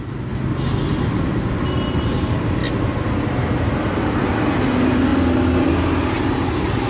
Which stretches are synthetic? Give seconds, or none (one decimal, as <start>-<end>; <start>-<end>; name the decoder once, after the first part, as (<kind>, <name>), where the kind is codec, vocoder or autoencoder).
none